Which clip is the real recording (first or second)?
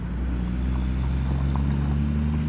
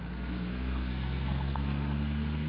first